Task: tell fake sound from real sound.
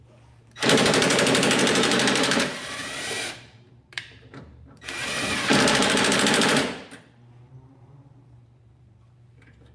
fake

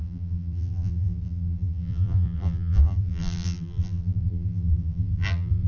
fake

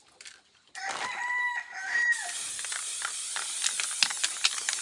fake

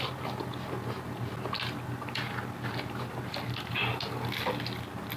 real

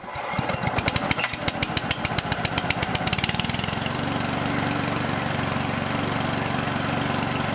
fake